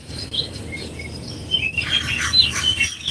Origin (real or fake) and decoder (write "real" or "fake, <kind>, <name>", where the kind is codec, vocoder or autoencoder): real